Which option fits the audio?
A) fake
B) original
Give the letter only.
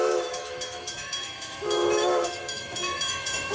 A